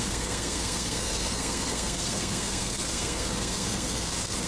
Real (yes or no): no